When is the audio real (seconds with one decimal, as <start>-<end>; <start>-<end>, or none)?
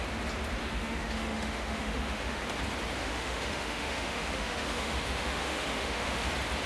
0.0-0.6; 2.4-3.0; 6.3-6.7